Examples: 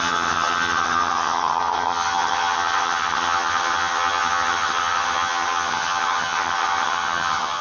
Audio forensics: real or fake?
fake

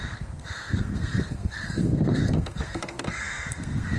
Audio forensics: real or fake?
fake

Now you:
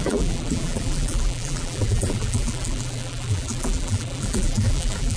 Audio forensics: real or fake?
fake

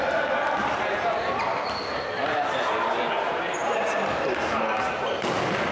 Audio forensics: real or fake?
real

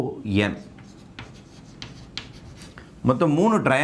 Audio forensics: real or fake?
real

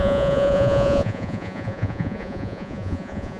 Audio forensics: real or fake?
fake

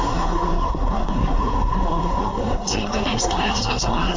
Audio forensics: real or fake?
fake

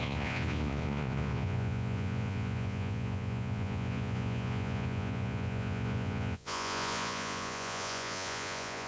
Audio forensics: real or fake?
fake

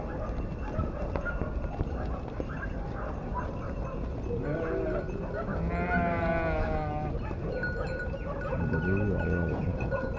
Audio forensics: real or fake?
real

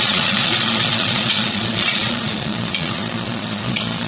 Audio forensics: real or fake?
fake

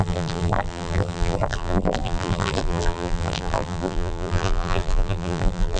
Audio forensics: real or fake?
fake